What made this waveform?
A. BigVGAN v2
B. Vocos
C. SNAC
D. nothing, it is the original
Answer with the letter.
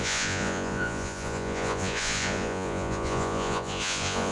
B